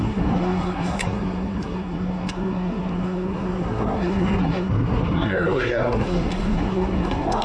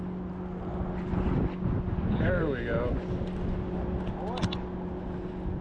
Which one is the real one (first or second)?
second